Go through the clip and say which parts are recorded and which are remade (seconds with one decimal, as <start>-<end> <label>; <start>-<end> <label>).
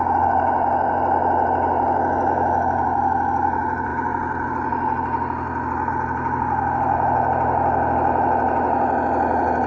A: 0.0-9.7 recorded